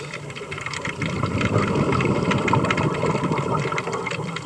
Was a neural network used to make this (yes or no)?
yes